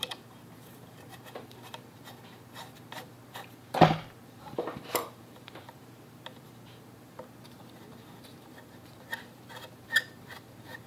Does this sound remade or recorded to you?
remade